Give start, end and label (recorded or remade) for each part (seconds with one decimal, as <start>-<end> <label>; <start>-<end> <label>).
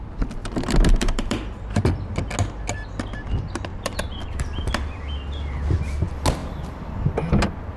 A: 0.0-0.4 recorded; 0.4-1.8 remade; 1.8-3.7 recorded; 3.7-4.6 remade; 4.6-7.8 recorded